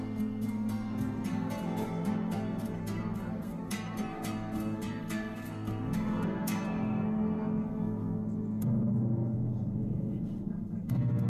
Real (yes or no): no